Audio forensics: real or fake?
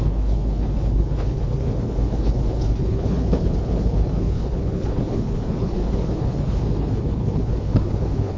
fake